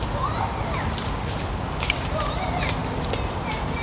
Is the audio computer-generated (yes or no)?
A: no